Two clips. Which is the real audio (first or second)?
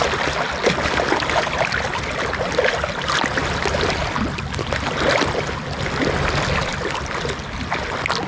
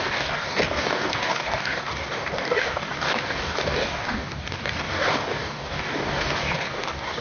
first